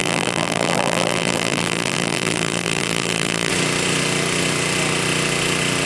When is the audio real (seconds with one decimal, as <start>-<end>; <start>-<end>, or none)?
3.5-5.9